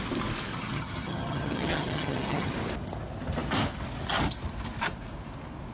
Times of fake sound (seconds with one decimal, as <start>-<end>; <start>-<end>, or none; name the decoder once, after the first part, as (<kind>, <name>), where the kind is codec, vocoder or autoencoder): 0.5-2.5 (vocoder, HiFi-GAN)